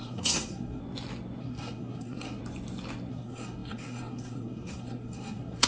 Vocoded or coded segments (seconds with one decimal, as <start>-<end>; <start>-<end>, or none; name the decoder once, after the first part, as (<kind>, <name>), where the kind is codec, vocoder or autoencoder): 0.0-0.8 (codec, SNAC); 1.4-2.4; 3.1-5.7